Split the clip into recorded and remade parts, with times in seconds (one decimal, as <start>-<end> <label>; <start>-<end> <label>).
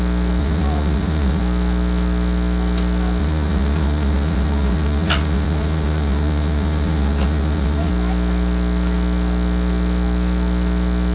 0.0-0.4 recorded; 0.4-1.4 remade; 1.4-3.2 recorded; 3.2-7.9 remade; 7.9-11.1 recorded